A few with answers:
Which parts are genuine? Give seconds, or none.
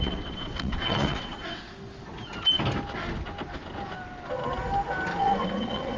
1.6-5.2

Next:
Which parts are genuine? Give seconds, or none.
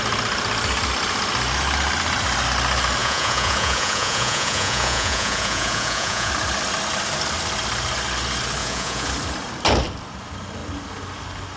0.0-3.0; 6.3-8.6; 9.1-11.6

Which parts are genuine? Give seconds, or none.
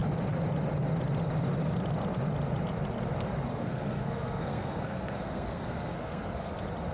0.0-3.5; 6.5-6.9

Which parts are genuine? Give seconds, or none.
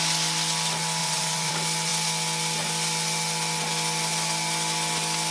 0.0-1.0; 1.5-5.3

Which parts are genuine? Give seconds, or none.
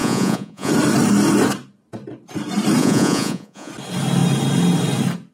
0.7-2.8; 3.7-5.3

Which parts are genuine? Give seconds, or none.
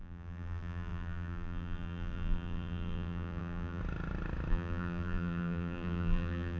3.8-4.5